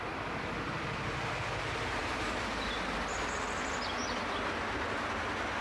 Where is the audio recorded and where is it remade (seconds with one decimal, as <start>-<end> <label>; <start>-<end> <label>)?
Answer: 0.0-5.6 recorded